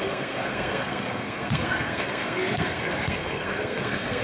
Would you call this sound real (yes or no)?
no